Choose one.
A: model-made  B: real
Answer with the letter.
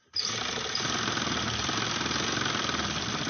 B